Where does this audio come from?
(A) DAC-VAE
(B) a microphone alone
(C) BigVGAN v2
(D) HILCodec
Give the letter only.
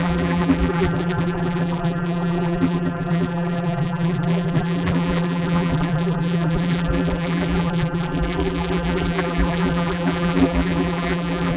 C